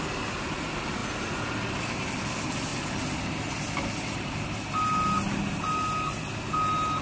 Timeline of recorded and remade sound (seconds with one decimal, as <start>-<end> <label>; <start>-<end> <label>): 0.0-7.0 recorded

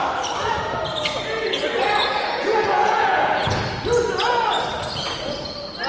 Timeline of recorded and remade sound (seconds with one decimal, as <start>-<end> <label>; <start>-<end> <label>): 0.0-2.0 recorded; 2.0-3.6 remade; 3.6-5.9 recorded

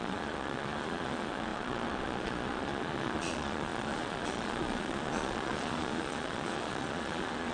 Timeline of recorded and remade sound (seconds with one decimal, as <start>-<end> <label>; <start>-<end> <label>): 0.0-7.5 remade

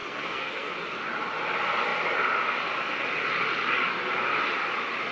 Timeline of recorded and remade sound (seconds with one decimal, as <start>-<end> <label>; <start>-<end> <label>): 0.0-0.7 remade; 0.7-5.1 recorded

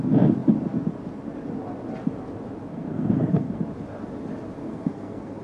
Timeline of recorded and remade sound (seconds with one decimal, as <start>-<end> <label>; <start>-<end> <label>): 0.0-2.7 recorded; 2.7-3.6 remade; 3.6-4.6 recorded; 4.6-5.4 remade